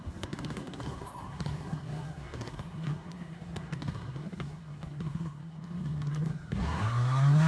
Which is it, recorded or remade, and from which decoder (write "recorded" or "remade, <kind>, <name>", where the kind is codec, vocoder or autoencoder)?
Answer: remade, codec, SNAC